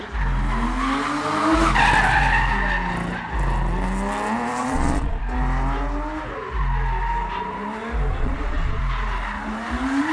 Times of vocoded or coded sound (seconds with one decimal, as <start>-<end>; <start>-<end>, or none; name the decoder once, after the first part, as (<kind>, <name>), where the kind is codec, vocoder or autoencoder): 4.6-5.2 (vocoder, Vocos); 8.1-8.8